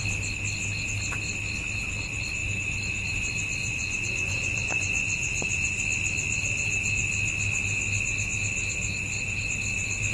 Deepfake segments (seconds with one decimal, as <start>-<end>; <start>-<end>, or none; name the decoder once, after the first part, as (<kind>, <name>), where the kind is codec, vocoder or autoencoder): 3.6-5.8 (vocoder, Vocos)